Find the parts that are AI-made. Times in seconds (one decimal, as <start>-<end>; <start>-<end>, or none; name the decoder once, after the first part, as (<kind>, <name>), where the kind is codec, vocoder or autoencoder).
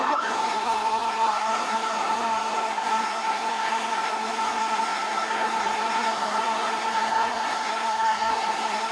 0.0-8.9 (codec, SNAC)